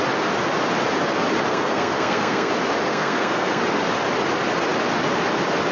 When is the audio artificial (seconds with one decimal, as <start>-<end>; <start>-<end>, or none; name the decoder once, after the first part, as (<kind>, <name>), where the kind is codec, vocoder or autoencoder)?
1.5-2.5 (codec, SNAC); 2.9-3.6